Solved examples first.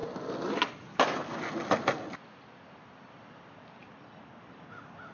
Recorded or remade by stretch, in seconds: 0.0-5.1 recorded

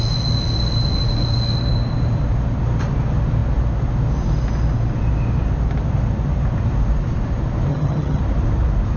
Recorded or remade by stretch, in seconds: 0.0-7.7 recorded; 7.7-8.2 remade; 8.2-9.0 recorded

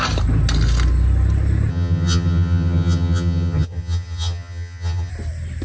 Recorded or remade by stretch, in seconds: 0.0-1.7 recorded; 1.7-5.1 remade; 5.1-5.6 recorded

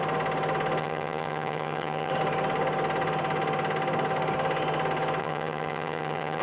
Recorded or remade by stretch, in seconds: 0.0-0.8 recorded; 0.8-2.1 remade; 2.1-5.2 recorded; 5.2-6.4 remade

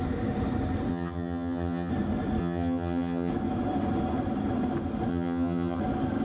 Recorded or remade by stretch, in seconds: 0.0-0.9 recorded; 0.9-1.9 remade; 1.9-2.4 recorded; 2.4-3.3 remade; 3.3-5.1 recorded; 5.1-5.8 remade; 5.8-6.2 recorded

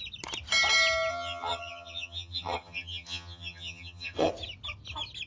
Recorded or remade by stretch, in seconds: 0.0-1.1 recorded; 1.1-4.3 remade; 4.3-5.3 recorded